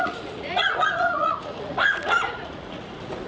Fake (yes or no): yes